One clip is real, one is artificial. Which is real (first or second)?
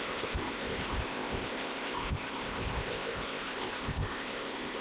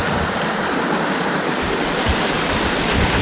second